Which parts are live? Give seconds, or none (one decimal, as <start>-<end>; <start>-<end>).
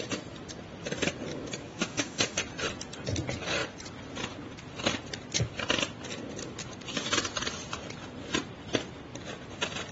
0.0-1.3; 2.4-9.9